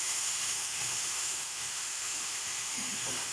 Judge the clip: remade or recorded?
remade